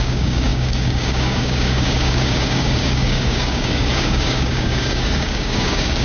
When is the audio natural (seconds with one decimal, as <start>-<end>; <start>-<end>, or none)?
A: none